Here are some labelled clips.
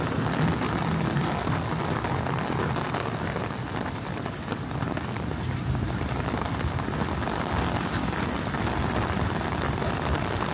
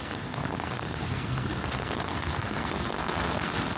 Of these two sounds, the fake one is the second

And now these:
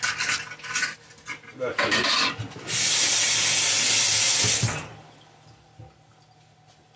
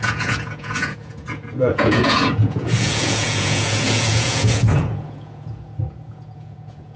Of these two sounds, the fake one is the second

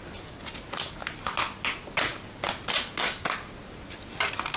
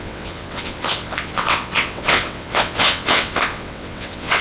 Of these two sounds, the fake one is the second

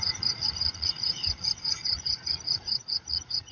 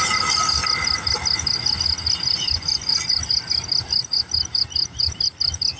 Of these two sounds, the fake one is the first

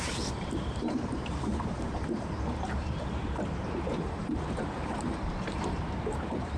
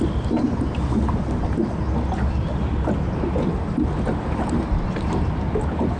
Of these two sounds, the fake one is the first